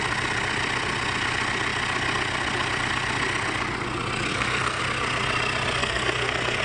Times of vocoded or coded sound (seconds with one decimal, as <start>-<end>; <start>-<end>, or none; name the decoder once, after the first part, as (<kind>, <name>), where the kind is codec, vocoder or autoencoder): 4.3-4.8 (codec, SNAC); 5.8-6.6